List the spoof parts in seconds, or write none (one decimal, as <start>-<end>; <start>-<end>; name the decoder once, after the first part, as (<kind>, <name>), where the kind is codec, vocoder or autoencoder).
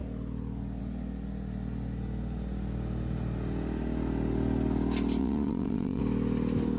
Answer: 5.2-6.0 (vocoder, WaveNeXt)